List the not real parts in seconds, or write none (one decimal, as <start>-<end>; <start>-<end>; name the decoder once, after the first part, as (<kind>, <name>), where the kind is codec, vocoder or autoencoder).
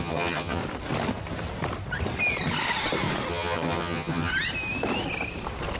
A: 0.0-0.6 (vocoder, HiFi-GAN); 3.3-4.3